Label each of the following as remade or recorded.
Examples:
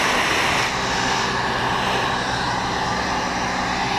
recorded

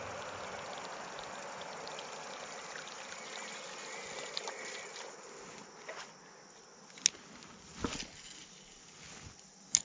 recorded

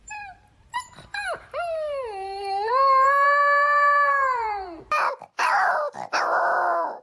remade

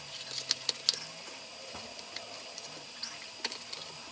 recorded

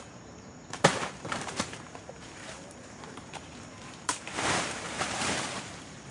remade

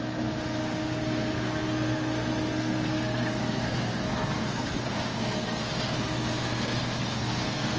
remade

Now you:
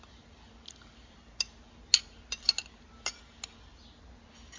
recorded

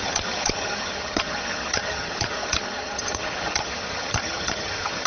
remade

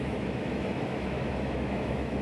remade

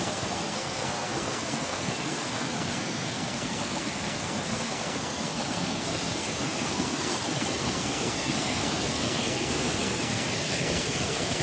remade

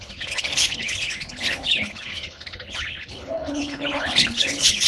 remade